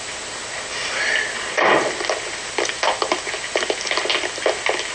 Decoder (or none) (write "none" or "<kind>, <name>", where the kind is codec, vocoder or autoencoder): none